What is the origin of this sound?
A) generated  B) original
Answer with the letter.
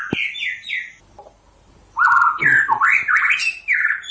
B